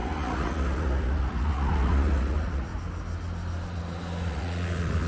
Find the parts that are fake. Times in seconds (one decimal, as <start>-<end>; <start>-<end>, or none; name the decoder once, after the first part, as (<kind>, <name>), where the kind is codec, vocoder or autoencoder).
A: 0.0-2.7 (vocoder, Vocos); 4.3-5.1